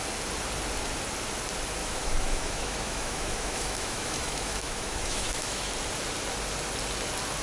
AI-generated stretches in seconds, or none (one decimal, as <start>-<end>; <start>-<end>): 1.8-5.7